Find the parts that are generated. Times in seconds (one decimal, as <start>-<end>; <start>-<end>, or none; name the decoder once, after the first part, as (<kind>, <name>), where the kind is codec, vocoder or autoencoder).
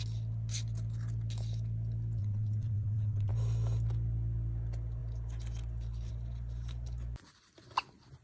2.2-3.3 (vocoder, WaveNeXt)